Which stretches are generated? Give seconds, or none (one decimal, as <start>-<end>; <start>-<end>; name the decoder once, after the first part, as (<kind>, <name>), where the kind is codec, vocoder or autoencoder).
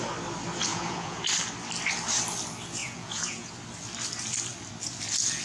0.7-1.2 (vocoder, Vocos); 2.8-3.5